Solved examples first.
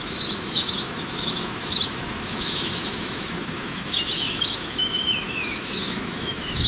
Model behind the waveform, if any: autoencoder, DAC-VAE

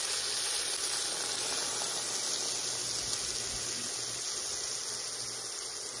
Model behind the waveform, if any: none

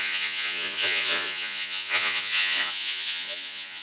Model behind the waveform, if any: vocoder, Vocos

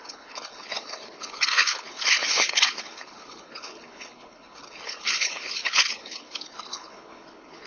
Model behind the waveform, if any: codec, HILCodec